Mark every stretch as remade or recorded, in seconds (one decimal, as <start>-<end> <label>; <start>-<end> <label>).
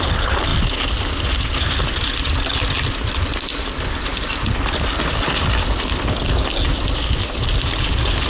0.0-8.3 recorded